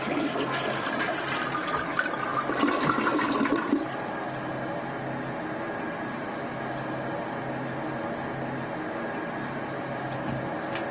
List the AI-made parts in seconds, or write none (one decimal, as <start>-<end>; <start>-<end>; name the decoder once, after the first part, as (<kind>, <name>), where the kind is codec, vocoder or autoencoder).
none